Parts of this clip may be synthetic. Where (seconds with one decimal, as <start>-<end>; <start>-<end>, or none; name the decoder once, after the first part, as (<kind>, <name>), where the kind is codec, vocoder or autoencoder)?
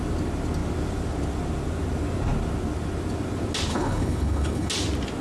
3.7-4.7 (codec, HILCodec)